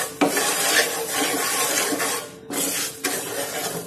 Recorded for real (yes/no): yes